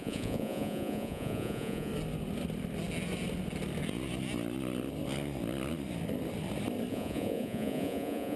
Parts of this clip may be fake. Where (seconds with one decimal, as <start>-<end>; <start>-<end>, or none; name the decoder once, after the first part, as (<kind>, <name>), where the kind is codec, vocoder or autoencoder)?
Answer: 0.0-1.9 (vocoder, Vocos); 6.9-8.4